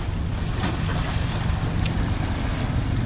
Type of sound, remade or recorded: recorded